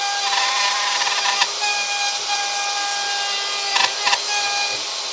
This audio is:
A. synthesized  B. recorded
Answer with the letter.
B